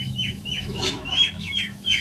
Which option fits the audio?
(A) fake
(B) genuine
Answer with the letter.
A